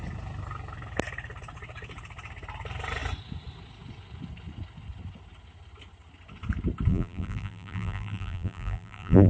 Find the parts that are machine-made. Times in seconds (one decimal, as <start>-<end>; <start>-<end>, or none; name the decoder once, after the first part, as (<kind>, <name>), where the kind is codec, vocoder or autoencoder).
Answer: 6.9-9.3 (vocoder, BigVGAN v2)